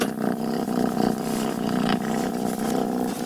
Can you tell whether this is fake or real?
real